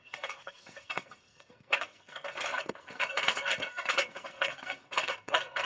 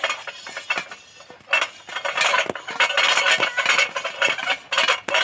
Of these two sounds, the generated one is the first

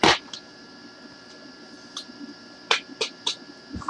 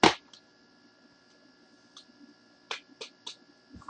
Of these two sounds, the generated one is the first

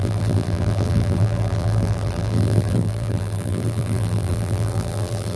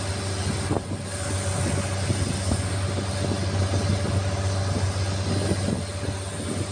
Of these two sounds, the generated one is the first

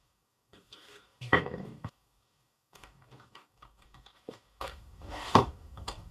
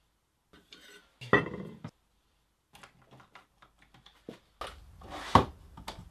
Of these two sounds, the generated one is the first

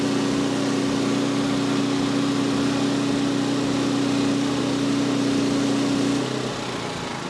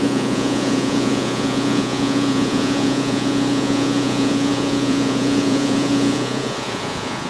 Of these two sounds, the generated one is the second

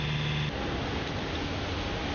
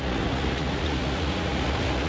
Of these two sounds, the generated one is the second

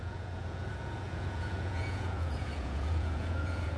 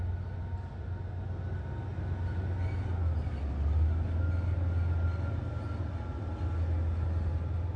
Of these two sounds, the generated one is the first